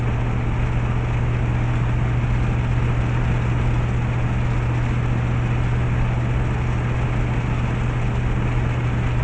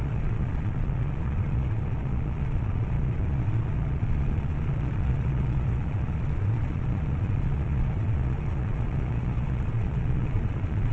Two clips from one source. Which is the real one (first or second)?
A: first